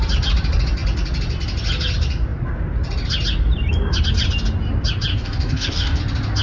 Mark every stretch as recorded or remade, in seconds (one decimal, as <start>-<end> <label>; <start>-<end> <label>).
0.0-5.1 recorded; 5.1-6.0 remade; 6.0-6.4 recorded